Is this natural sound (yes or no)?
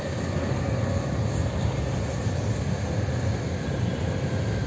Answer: yes